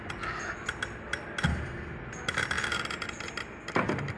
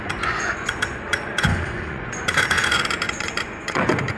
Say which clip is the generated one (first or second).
second